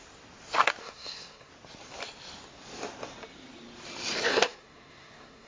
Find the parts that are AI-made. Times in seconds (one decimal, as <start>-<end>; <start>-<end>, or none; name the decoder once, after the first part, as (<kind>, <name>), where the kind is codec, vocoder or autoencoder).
0.8-1.5 (codec, SNAC); 4.3-5.5